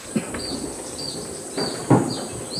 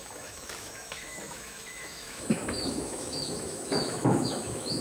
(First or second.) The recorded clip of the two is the first